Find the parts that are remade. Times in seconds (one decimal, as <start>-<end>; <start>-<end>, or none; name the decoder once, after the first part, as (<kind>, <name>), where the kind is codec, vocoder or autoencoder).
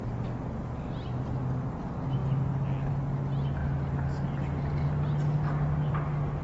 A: none